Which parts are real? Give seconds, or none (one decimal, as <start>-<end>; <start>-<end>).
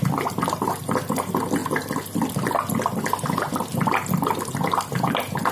0.0-5.5